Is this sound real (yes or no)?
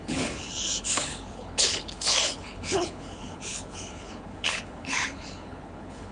no